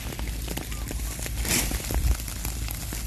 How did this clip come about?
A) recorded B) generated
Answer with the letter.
A